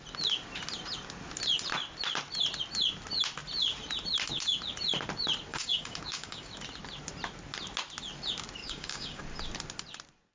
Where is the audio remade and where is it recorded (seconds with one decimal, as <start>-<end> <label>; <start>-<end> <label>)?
0.0-5.5 recorded; 5.5-6.5 remade; 6.5-8.6 recorded; 8.6-9.2 remade; 9.2-10.3 recorded